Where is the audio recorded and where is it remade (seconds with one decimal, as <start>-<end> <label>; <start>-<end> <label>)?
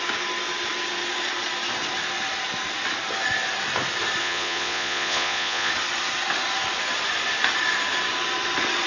0.0-4.2 recorded; 4.2-5.7 remade; 5.7-8.9 recorded